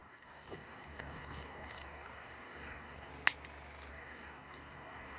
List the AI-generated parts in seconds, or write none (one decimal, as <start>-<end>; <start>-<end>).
0.0-3.1; 3.9-5.2

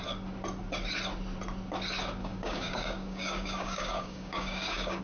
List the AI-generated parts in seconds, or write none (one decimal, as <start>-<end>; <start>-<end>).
2.2-5.0

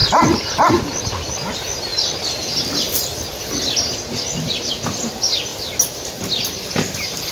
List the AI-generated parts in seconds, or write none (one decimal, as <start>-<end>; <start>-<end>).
none